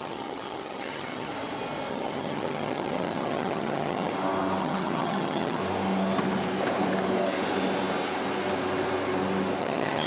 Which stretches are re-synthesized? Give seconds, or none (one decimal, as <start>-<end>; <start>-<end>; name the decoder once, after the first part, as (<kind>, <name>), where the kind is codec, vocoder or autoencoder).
0.0-1.3 (vocoder, HiFi-GAN); 1.9-4.1; 4.6-5.6; 9.6-10.1

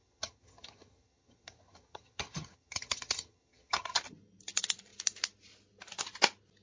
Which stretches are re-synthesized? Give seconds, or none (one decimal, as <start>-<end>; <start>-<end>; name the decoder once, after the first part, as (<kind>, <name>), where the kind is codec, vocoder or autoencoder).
0.0-4.0 (vocoder, HiFi-GAN)